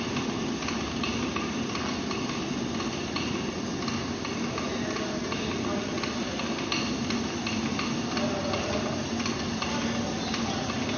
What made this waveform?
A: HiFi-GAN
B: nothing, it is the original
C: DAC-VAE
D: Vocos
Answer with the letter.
B